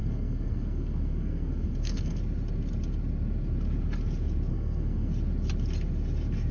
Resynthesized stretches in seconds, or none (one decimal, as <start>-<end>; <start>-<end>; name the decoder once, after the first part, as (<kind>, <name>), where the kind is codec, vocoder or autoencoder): 0.0-2.2 (codec, SNAC); 4.5-5.1